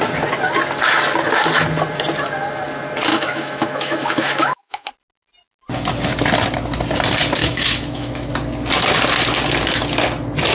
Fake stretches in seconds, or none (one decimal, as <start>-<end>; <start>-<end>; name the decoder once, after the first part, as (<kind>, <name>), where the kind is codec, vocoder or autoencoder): 3.1-4.9 (autoencoder, DAC-VAE); 7.4-8.3